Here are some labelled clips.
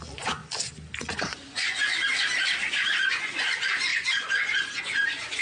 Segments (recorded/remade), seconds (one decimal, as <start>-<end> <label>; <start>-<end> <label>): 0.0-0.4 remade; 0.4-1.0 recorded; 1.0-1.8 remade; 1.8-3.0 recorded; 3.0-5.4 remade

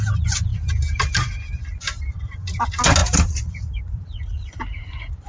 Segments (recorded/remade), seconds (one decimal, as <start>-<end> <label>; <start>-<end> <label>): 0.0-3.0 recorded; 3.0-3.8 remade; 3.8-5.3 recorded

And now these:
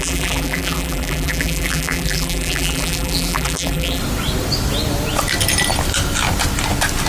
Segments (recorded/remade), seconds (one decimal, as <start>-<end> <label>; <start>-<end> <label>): 0.0-4.0 remade; 4.0-7.1 recorded

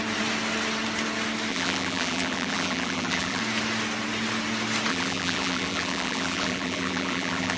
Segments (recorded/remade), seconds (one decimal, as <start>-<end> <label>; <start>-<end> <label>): 0.0-1.5 recorded; 1.5-3.4 remade; 3.4-4.9 recorded; 4.9-7.6 remade

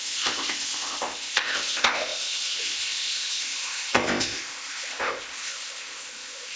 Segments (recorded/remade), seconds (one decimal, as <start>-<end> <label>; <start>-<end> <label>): 0.0-6.6 remade